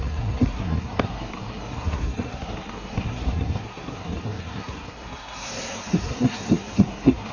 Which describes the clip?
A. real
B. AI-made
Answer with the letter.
B